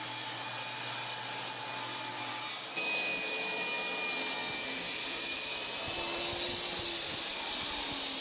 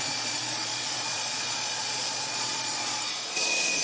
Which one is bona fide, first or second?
first